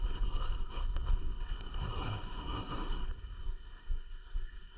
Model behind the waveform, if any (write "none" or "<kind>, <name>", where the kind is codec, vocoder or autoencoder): codec, SNAC